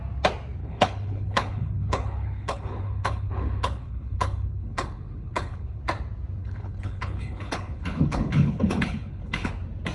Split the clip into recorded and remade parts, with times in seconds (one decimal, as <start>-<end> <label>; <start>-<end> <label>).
0.0-0.6 recorded; 0.6-5.8 remade; 5.8-6.4 recorded; 6.4-9.5 remade; 9.5-9.9 recorded

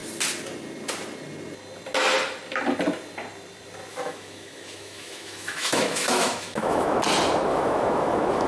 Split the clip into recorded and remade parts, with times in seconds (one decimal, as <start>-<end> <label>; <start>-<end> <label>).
0.0-3.9 recorded; 3.9-7.0 remade; 7.0-7.5 recorded; 7.5-8.5 remade

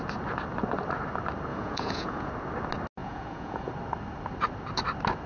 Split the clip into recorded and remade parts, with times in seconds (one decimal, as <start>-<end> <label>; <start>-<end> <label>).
0.0-1.5 recorded; 1.5-2.3 remade; 2.3-3.0 recorded; 3.0-3.7 remade; 3.7-5.3 recorded

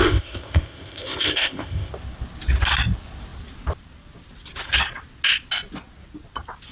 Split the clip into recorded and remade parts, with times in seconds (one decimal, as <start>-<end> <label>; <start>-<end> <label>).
0.0-1.9 remade; 1.9-6.7 recorded

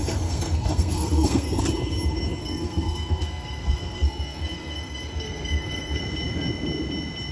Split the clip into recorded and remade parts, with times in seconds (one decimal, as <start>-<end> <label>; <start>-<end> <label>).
0.0-1.6 remade; 1.6-2.4 recorded; 2.4-6.0 remade; 6.0-7.3 recorded

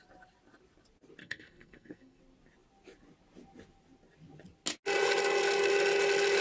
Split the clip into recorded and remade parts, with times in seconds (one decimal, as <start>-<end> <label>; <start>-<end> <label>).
0.0-1.2 recorded; 1.2-2.2 remade; 2.2-6.4 recorded

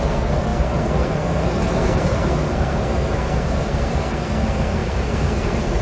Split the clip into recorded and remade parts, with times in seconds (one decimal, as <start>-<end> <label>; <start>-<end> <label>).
0.0-5.8 remade

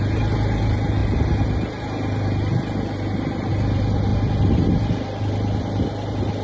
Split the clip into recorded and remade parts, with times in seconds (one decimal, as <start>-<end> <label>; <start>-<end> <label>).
0.0-4.1 recorded; 4.1-5.2 remade; 5.2-6.4 recorded